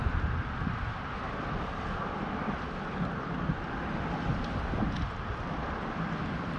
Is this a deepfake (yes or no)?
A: no